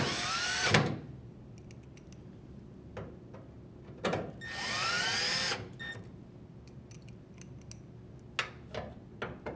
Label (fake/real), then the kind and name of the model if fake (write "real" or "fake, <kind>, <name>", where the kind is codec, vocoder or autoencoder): real